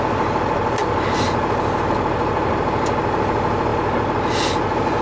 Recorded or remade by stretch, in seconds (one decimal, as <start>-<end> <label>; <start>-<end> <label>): 0.0-5.0 recorded